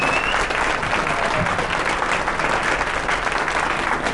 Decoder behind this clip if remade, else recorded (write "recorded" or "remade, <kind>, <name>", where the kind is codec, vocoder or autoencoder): recorded